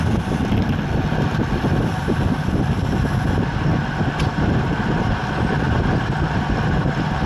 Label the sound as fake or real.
real